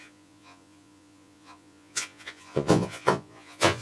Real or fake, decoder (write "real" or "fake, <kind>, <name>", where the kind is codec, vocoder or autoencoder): fake, vocoder, Vocos